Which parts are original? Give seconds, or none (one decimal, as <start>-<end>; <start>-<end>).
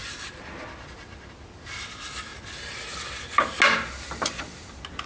0.0-5.1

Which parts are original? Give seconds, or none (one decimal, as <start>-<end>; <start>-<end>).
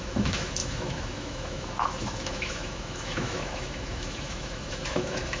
none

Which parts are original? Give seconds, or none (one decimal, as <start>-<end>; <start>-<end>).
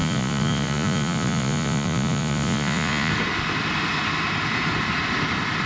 3.1-5.7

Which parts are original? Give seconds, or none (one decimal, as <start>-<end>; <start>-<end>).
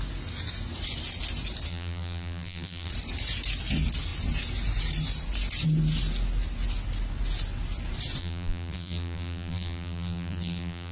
0.0-1.7; 2.9-8.2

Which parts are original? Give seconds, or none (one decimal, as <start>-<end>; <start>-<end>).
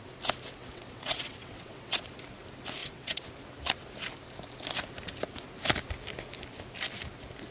0.0-0.6; 2.1-2.8; 3.3-7.5